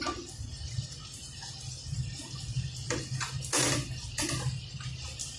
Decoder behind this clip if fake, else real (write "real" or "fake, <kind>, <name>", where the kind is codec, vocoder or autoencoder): real